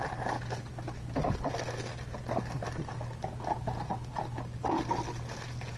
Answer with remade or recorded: recorded